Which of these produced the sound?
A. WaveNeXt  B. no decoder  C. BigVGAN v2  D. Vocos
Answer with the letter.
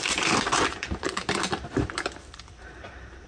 C